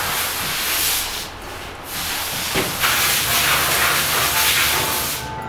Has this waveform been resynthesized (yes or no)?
no